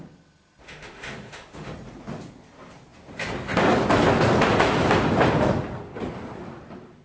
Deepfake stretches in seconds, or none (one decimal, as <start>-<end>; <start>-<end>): 0.6-1.7